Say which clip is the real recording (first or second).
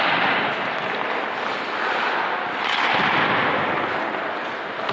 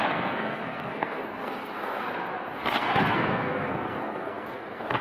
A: first